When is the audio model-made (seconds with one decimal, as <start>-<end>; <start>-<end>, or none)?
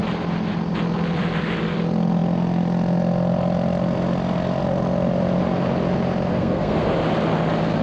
6.3-6.9